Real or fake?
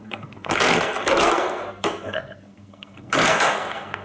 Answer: fake